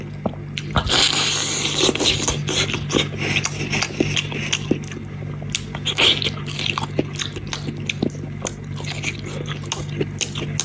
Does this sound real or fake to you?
real